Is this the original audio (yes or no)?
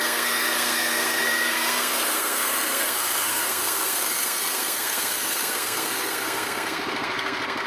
no